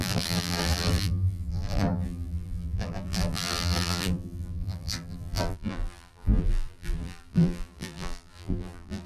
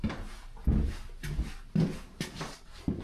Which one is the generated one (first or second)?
first